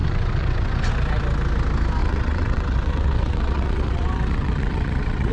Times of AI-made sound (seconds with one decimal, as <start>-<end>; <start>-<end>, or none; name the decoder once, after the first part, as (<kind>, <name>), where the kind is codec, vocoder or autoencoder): 0.0-0.9 (vocoder, WaveNeXt); 2.0-5.3